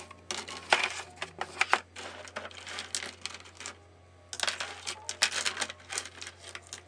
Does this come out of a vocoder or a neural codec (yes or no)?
no